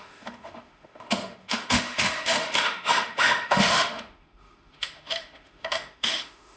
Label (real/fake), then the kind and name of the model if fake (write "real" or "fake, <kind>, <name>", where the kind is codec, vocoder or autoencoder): fake, autoencoder, DAC-VAE